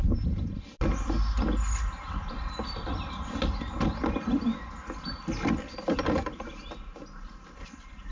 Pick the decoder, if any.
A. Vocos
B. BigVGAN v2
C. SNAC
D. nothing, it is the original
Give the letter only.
D